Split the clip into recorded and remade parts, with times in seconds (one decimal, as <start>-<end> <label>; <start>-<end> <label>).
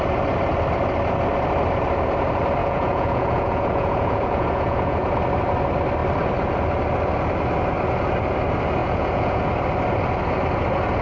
0.0-2.6 recorded; 2.6-5.1 remade; 5.1-8.8 recorded; 8.8-9.4 remade; 9.4-11.0 recorded